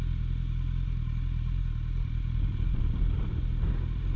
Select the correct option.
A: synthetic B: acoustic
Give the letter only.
A